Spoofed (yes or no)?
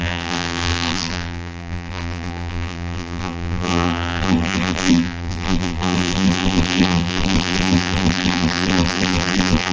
yes